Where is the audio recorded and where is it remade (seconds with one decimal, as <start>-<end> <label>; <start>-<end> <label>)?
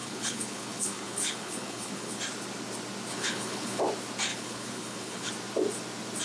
0.0-2.2 remade; 2.2-3.1 recorded; 3.1-3.8 remade; 3.8-4.3 recorded; 4.3-5.3 remade; 5.3-6.2 recorded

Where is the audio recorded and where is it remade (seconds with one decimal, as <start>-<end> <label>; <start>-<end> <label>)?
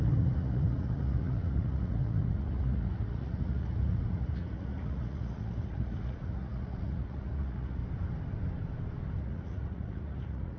0.0-7.8 remade; 7.8-9.2 recorded; 9.2-10.6 remade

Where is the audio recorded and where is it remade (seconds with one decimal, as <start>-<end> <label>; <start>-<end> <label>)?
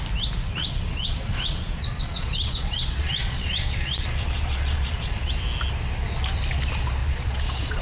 0.0-0.6 recorded; 0.6-5.3 remade; 5.3-7.0 recorded; 7.0-7.8 remade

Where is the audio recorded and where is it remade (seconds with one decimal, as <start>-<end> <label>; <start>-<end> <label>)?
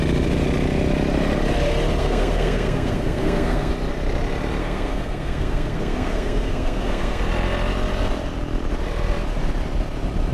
0.0-2.0 recorded; 2.0-3.7 remade; 3.7-4.6 recorded; 4.6-7.2 remade; 7.2-10.3 recorded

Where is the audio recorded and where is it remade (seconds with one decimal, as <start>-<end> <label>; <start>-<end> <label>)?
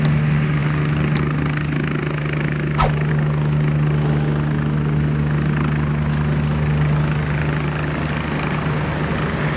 0.0-9.6 recorded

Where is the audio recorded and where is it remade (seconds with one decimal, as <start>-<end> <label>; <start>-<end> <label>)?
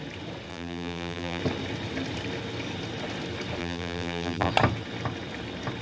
0.0-0.5 recorded; 0.5-1.4 remade; 1.4-3.6 recorded; 3.6-4.5 remade; 4.5-5.8 recorded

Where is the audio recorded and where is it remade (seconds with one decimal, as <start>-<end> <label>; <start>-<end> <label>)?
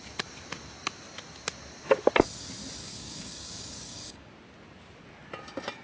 0.0-2.8 recorded; 2.8-4.3 remade; 4.3-5.8 recorded